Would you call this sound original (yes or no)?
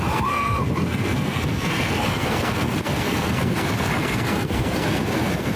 no